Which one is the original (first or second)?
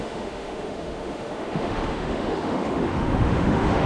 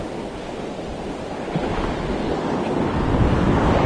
second